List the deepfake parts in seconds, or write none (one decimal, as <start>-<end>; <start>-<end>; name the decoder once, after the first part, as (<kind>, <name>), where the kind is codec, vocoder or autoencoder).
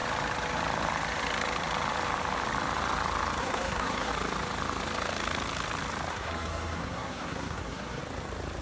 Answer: 3.4-4.1 (codec, SNAC); 6.1-8.0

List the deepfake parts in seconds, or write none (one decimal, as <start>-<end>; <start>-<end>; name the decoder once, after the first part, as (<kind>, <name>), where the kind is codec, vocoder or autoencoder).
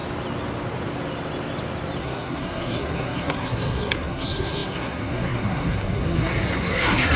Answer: 2.0-7.2 (codec, SNAC)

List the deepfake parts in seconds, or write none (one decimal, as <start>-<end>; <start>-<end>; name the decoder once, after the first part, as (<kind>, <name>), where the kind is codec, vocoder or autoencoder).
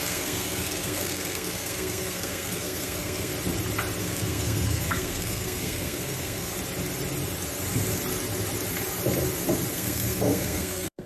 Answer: 0.0-3.3 (codec, SNAC); 4.0-6.5; 9.7-11.1